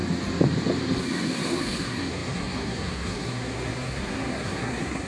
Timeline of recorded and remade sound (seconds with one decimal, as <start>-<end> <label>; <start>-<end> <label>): 0.0-1.0 recorded; 1.0-5.1 remade